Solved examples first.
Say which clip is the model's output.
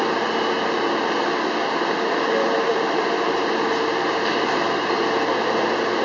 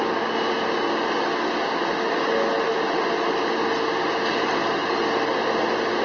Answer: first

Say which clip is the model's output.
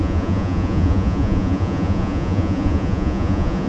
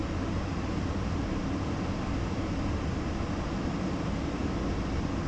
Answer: first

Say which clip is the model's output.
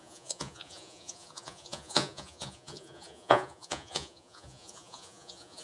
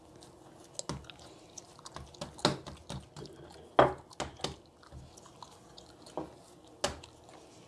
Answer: first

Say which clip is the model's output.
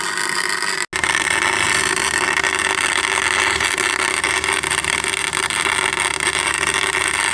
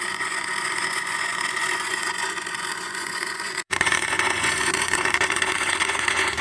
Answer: second